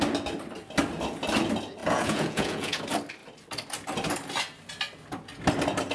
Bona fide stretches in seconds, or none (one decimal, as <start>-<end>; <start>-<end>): 0.0-1.8; 2.8-5.9